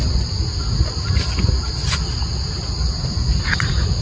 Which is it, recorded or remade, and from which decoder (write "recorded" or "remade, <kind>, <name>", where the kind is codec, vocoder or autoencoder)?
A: recorded